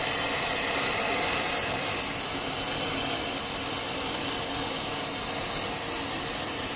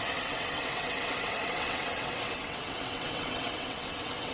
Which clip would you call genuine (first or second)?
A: first